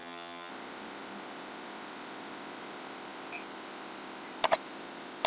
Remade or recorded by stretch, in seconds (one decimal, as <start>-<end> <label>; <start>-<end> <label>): 0.0-0.5 remade; 0.5-5.3 recorded